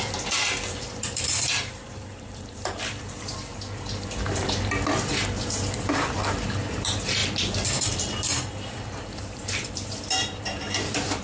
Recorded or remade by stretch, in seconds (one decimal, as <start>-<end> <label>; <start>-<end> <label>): 0.0-3.5 remade; 3.5-5.5 recorded; 5.5-11.2 remade